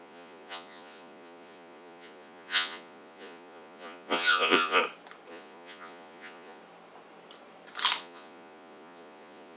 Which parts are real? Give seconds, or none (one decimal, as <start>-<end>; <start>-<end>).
4.8-5.3; 6.6-8.0